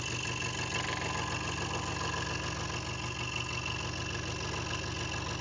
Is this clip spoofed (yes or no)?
no